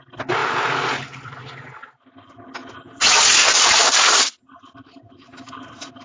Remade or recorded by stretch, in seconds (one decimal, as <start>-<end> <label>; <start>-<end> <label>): 0.0-0.4 recorded; 0.4-1.5 remade; 1.5-3.4 recorded; 3.4-6.0 remade